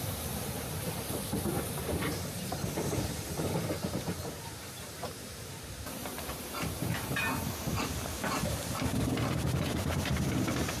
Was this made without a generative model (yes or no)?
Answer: no